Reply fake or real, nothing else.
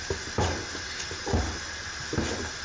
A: real